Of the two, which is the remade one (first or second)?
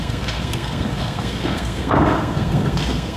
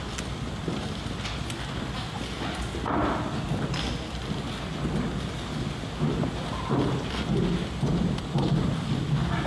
first